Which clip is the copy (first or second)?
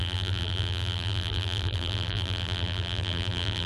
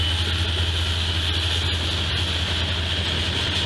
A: first